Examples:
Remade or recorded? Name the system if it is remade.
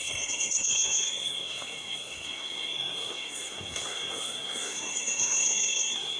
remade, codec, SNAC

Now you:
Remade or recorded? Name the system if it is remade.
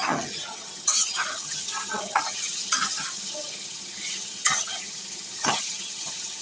remade, vocoder, HiFi-GAN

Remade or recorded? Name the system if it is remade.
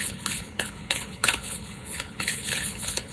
remade, codec, HILCodec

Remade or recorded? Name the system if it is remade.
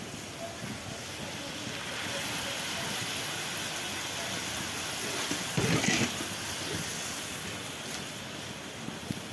recorded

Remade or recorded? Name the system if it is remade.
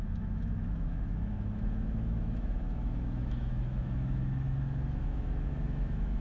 remade, autoencoder, DAC-VAE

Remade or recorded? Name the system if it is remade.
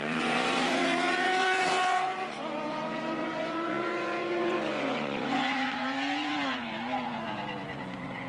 remade, vocoder, Vocos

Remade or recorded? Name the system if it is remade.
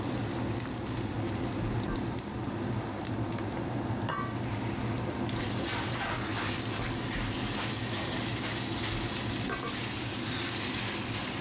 recorded